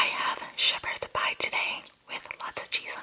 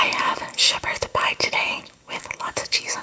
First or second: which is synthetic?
second